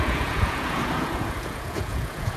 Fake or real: fake